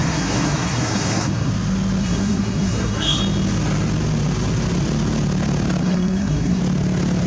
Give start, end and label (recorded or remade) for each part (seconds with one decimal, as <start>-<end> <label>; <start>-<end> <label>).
0.0-1.5 remade; 1.5-2.0 recorded; 2.0-3.2 remade; 3.2-5.8 recorded; 5.8-6.6 remade; 6.6-7.3 recorded